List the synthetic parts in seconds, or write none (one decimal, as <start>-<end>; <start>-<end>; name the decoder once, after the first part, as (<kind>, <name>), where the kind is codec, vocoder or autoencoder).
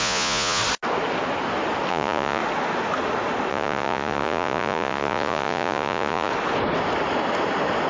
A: 0.0-0.6 (vocoder, Vocos); 1.9-2.4; 3.5-6.3